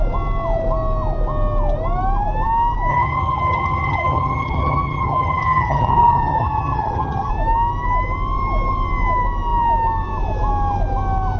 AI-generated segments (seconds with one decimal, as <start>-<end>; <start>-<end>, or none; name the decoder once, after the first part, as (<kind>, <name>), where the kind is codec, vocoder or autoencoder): 2.9-7.3 (vocoder, HiFi-GAN)